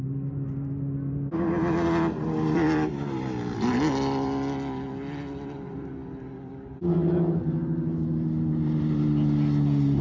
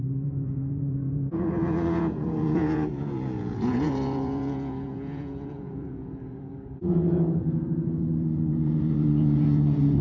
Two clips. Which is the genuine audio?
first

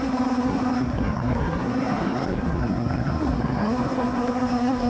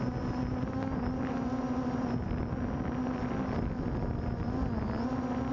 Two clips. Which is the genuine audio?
second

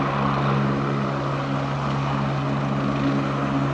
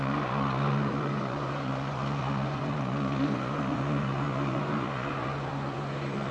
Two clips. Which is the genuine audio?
first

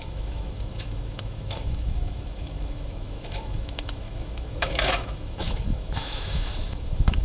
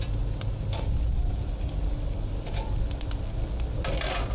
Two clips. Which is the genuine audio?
second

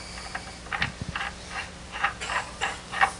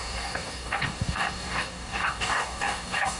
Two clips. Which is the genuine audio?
first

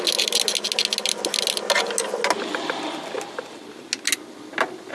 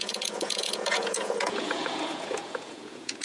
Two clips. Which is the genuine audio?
first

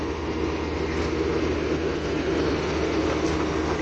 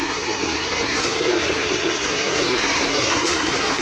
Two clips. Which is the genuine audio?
first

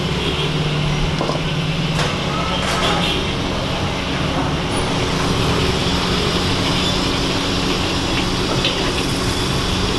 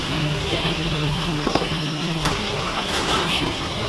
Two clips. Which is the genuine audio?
first